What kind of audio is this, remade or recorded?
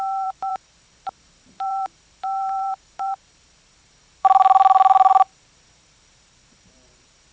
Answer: remade